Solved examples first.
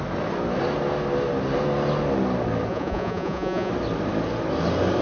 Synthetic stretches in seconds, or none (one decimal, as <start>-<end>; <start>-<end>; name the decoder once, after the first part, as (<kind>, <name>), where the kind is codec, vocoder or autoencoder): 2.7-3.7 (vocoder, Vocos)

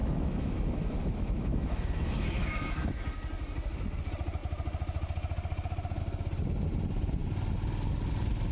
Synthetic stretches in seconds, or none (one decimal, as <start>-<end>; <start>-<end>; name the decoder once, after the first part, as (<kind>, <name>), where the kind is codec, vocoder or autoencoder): 0.0-3.0 (autoencoder, DAC-VAE)

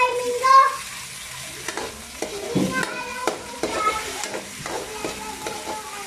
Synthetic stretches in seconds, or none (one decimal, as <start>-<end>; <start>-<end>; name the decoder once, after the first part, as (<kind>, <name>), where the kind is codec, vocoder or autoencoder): 3.2-4.9 (vocoder, BigVGAN v2)

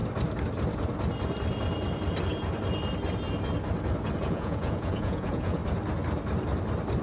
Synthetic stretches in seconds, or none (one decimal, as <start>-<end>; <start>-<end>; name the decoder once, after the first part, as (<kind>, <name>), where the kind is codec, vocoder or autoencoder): 4.2-5.6 (vocoder, Vocos)